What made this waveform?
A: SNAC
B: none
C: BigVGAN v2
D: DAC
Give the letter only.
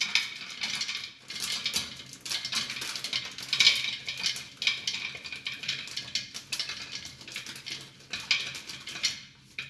B